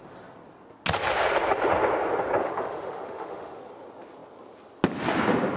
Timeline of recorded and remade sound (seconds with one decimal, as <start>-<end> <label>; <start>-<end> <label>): 0.0-2.4 recorded; 2.4-3.6 remade; 3.6-5.6 recorded